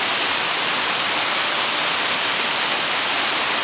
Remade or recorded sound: recorded